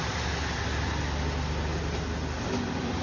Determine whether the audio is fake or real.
real